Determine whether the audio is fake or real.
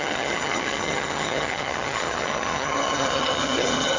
fake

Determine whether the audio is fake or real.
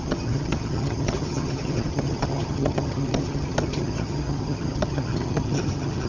fake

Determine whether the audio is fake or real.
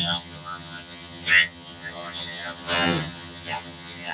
fake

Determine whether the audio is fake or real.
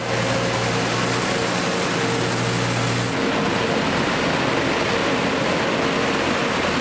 real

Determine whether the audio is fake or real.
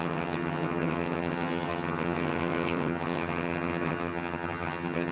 fake